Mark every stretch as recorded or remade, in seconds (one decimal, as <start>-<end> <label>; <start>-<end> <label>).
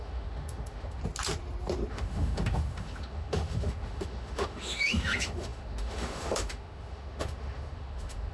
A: 0.0-1.0 remade; 1.0-1.9 recorded; 1.9-8.3 remade